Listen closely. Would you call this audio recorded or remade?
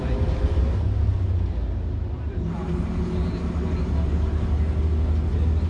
recorded